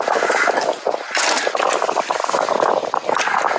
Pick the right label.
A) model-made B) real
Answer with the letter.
B